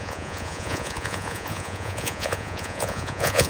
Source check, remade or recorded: remade